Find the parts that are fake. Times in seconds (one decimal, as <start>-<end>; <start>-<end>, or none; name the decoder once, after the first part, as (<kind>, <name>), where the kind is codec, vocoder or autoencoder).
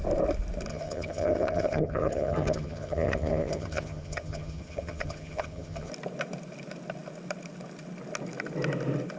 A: 0.7-5.9 (vocoder, HiFi-GAN)